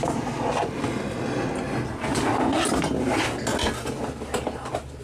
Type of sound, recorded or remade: recorded